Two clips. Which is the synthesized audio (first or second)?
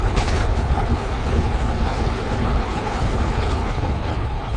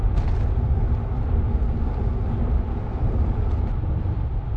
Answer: first